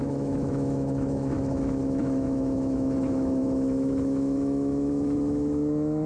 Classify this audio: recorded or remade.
remade